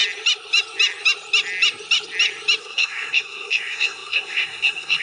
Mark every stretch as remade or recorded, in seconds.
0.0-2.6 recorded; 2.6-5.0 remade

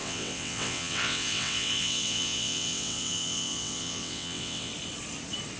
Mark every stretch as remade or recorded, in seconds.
0.0-4.7 remade; 4.7-5.6 recorded

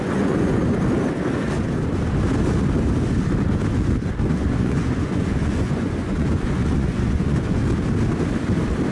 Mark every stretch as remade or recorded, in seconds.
0.0-0.6 remade; 0.6-4.3 recorded; 4.3-7.6 remade; 7.6-8.9 recorded